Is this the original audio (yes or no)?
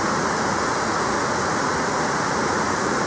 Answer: no